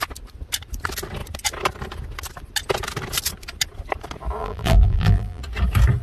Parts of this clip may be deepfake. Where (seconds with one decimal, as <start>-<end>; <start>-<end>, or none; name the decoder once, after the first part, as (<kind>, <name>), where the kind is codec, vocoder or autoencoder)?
4.4-5.4 (vocoder, BigVGAN v2)